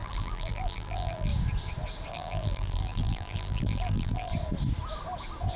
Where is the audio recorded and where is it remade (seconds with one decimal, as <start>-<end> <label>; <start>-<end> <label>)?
0.0-1.3 remade; 1.3-2.1 recorded; 2.1-4.3 remade; 4.3-5.6 recorded

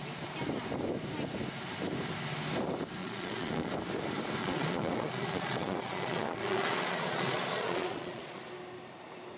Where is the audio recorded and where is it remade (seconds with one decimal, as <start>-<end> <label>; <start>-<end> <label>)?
0.0-3.0 recorded; 3.0-3.7 remade; 3.7-4.4 recorded; 4.4-8.4 remade; 8.4-9.4 recorded